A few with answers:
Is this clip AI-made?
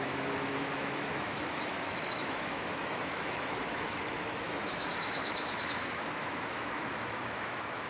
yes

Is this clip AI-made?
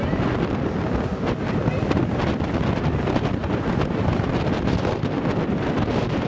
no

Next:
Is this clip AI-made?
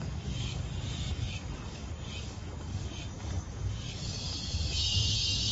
yes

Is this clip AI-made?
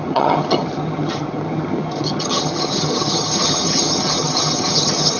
yes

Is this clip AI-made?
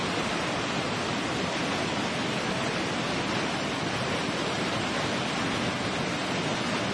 no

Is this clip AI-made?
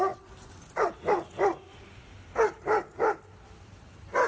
no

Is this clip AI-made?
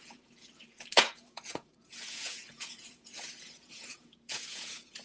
yes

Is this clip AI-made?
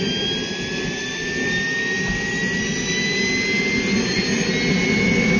no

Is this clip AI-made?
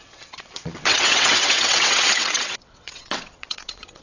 yes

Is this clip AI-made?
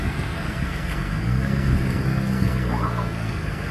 yes